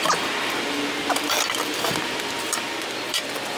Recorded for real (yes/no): no